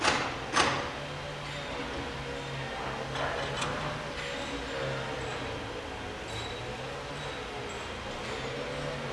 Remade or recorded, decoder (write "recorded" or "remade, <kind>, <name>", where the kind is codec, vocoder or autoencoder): recorded